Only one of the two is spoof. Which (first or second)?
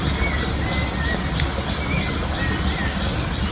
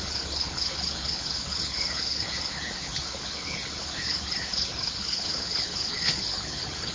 second